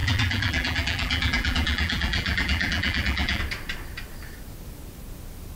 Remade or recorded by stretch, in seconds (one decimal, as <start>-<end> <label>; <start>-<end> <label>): 0.0-3.4 remade; 3.4-5.6 recorded